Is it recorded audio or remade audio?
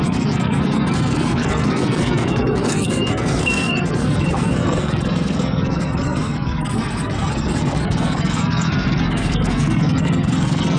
remade